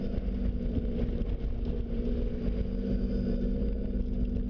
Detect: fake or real real